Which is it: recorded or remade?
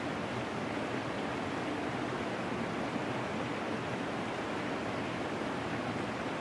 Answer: recorded